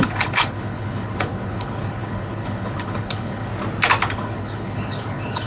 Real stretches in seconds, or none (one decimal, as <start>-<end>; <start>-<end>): 3.5-4.1